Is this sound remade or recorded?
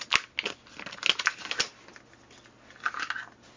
recorded